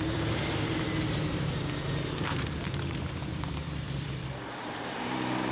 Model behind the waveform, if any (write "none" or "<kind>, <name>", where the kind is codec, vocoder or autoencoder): vocoder, BigVGAN v2